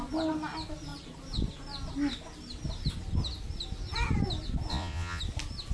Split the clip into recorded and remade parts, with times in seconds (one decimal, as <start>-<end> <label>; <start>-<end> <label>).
0.0-4.7 recorded; 4.7-5.2 remade; 5.2-5.7 recorded